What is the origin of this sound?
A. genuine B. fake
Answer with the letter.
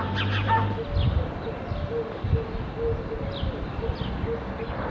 A